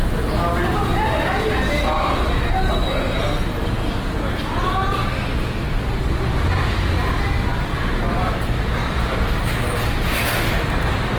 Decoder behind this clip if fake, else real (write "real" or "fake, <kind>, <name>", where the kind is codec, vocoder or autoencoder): real